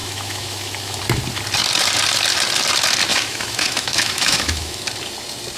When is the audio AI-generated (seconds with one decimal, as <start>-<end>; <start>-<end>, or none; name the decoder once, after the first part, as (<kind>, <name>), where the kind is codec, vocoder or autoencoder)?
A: 0.0-1.0 (autoencoder, DAC-VAE); 3.1-4.8